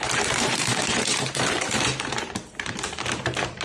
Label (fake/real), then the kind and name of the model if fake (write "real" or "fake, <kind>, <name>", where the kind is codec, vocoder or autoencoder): fake, vocoder, BigVGAN v2